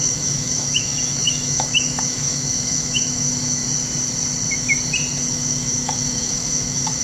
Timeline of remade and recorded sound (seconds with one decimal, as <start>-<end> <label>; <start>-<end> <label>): 0.0-3.6 remade; 3.6-5.3 recorded; 5.3-7.0 remade